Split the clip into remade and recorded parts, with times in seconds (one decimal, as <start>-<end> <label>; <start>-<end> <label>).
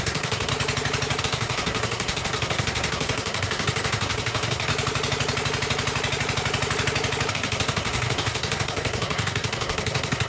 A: 0.0-0.5 remade; 0.5-1.2 recorded; 1.2-4.7 remade; 4.7-7.3 recorded; 7.3-10.3 remade